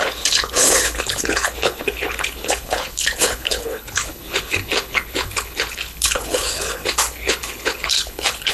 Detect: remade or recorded remade